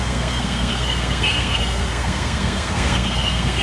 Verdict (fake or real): fake